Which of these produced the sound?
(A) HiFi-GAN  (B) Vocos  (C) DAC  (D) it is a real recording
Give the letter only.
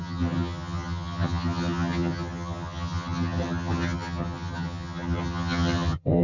A